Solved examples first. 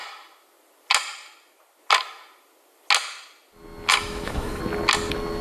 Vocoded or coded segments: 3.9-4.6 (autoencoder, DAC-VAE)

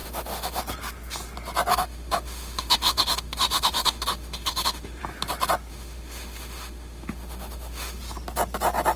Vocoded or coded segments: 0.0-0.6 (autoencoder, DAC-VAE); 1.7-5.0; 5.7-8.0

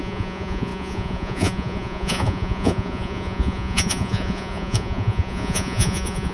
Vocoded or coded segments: 0.0-6.3 (vocoder, Vocos)

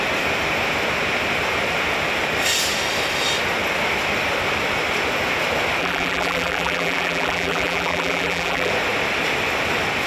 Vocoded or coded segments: 5.8-8.7 (vocoder, BigVGAN v2)

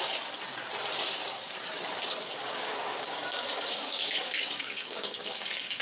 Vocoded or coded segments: 2.4-5.8 (codec, DAC)

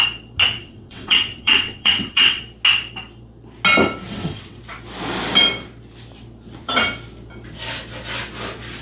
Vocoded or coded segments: 0.6-2.4 (vocoder, WaveNeXt); 4.1-4.6